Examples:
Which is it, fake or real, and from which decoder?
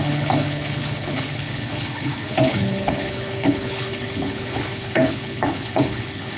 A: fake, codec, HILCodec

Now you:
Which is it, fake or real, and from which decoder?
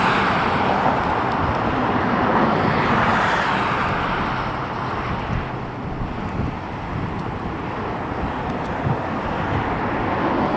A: real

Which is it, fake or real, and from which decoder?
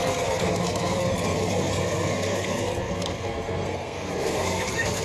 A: fake, codec, SNAC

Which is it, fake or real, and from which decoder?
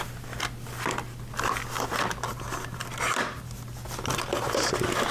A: real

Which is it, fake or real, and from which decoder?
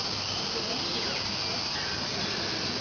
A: real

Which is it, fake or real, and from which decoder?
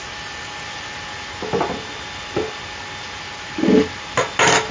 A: real